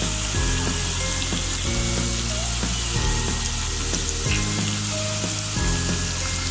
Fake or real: real